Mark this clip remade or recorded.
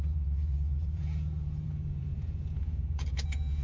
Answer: remade